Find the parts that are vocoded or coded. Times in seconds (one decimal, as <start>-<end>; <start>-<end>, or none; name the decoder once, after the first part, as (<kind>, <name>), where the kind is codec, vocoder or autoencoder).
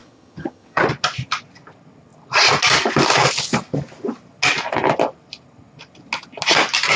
0.0-0.8 (vocoder, HiFi-GAN)